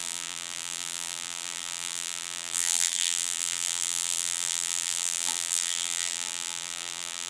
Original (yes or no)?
no